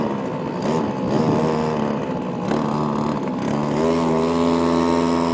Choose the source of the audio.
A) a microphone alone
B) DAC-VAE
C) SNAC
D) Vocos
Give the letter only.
A